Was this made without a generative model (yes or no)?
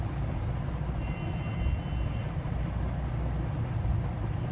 yes